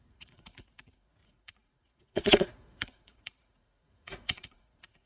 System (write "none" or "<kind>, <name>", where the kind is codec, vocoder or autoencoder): vocoder, Vocos